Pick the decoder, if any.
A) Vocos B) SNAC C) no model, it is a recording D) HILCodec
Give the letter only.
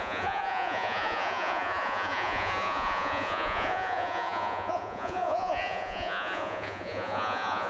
A